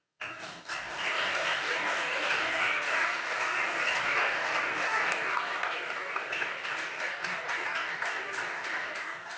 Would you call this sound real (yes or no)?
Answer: no